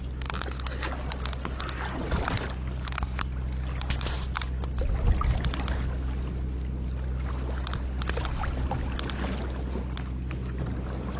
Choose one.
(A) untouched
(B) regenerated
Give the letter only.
A